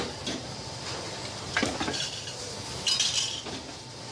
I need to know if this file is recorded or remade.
remade